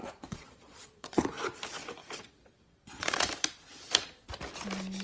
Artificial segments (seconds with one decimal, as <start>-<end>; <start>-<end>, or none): 0.0-1.2; 2.0-3.3